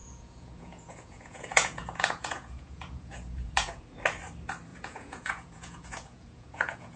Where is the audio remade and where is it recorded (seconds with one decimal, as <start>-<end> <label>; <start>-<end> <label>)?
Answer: 0.0-3.8 remade; 3.8-4.7 recorded; 4.7-7.0 remade